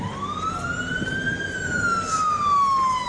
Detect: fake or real real